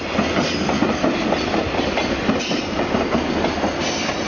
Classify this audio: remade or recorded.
recorded